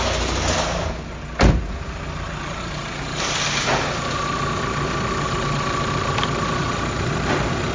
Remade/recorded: recorded